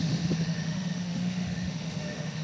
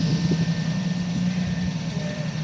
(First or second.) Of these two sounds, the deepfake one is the first